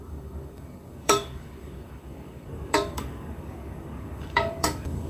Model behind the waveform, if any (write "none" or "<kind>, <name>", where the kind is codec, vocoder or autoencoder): codec, DAC